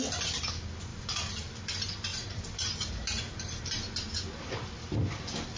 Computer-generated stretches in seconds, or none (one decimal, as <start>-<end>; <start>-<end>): 0.9-1.6; 2.1-3.6